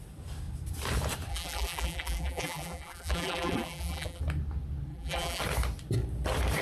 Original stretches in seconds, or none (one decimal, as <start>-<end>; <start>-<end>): 0.0-1.3; 4.2-4.9; 5.4-6.6